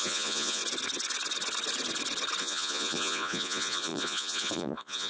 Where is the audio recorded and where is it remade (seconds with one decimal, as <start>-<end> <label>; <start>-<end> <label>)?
0.0-0.6 remade; 0.6-2.4 recorded; 2.4-5.1 remade